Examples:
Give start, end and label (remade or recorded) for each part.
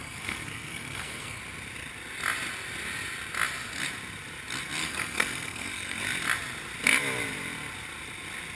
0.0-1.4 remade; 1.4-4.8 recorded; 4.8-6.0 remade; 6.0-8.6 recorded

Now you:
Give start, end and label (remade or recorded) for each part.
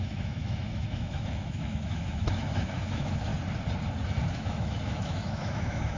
0.0-3.3 remade; 3.3-4.3 recorded; 4.3-6.0 remade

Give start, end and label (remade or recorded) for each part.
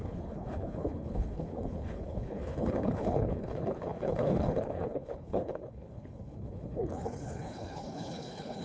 0.0-8.6 remade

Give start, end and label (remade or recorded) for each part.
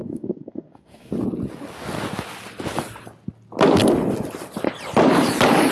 0.0-1.1 remade; 1.1-5.7 recorded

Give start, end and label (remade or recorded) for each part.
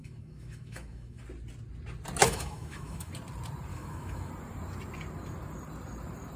0.0-1.2 remade; 1.2-2.2 recorded; 2.2-3.1 remade; 3.1-3.7 recorded; 3.7-4.3 remade; 4.3-6.4 recorded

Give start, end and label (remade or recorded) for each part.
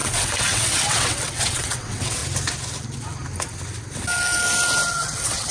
0.0-2.2 remade; 2.2-4.9 recorded; 4.9-5.5 remade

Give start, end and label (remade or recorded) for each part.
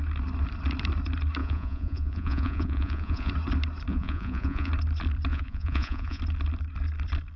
0.0-1.4 recorded; 1.4-3.3 remade; 3.3-3.9 recorded; 3.9-4.7 remade; 4.7-5.3 recorded; 5.3-6.2 remade; 6.2-7.4 recorded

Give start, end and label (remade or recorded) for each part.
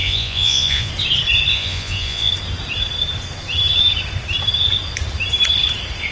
0.0-0.9 remade; 0.9-1.5 recorded; 1.5-2.3 remade; 2.3-6.1 recorded